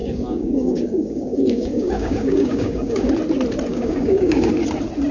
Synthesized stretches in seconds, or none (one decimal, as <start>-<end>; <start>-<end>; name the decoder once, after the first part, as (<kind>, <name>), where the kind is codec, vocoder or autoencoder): 0.0-3.1 (codec, DAC); 3.7-4.5

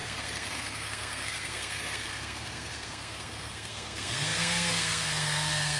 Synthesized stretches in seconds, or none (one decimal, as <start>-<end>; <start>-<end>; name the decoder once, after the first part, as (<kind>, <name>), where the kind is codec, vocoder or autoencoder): 0.0-5.8 (codec, SNAC)

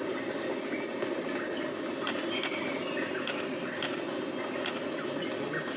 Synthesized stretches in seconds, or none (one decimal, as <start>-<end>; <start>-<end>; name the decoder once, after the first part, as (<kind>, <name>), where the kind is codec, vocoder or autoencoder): none